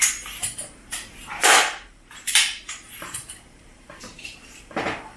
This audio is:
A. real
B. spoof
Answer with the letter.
B